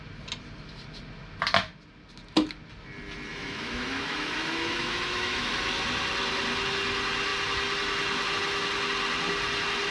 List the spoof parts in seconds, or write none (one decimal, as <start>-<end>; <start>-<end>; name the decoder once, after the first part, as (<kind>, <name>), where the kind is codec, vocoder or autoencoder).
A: 3.3-5.5 (autoencoder, DAC-VAE)